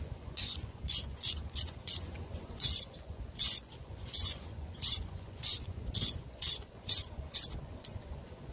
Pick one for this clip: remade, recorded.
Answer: remade